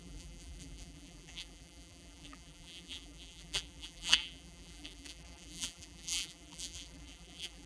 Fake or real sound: fake